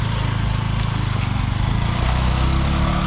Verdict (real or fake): real